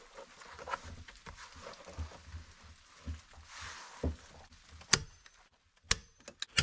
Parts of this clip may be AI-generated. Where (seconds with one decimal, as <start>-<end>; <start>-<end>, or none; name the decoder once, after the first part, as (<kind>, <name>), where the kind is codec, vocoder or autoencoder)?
none